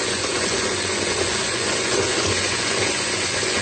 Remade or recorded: remade